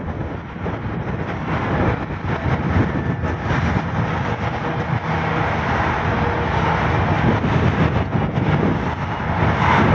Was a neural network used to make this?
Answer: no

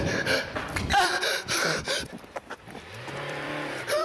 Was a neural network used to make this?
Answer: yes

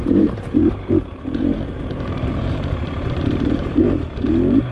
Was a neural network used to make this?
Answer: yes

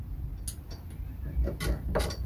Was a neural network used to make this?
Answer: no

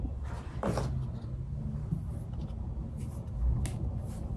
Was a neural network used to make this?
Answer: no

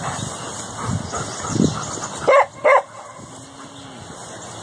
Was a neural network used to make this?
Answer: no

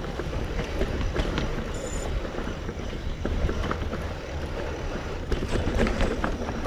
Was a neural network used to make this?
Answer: yes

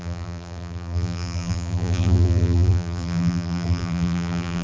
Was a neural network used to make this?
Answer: yes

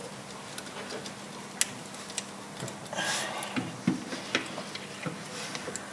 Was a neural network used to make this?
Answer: no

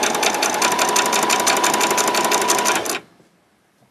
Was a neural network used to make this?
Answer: no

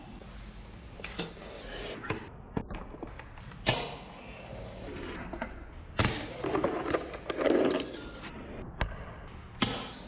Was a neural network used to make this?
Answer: no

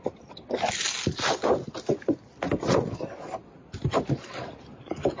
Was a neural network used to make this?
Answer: yes